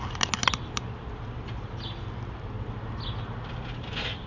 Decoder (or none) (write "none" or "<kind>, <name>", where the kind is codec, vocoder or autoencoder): none